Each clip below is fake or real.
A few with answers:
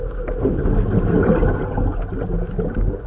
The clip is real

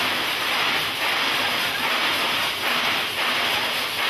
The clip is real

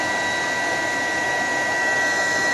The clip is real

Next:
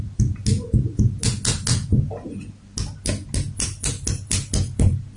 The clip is real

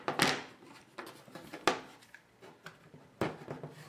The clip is real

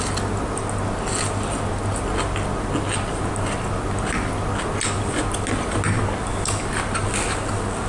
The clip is real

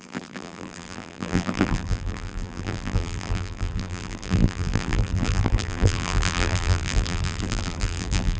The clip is fake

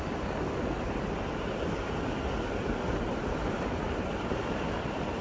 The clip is real